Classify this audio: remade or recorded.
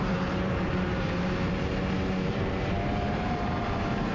remade